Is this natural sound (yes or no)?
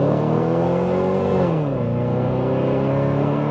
no